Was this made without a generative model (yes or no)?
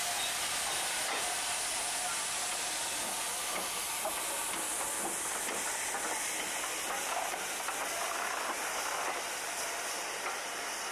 yes